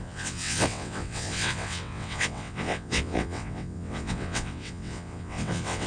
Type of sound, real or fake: fake